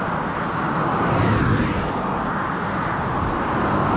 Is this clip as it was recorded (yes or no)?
yes